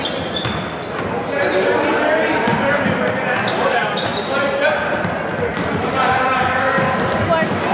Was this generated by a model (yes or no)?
no